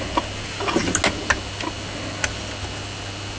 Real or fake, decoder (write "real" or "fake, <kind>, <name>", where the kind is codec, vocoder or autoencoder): real